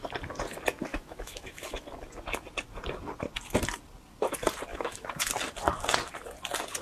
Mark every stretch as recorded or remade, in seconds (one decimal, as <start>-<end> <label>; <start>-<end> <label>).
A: 0.0-0.9 recorded; 0.9-1.8 remade; 1.8-4.7 recorded; 4.7-5.3 remade; 5.3-6.8 recorded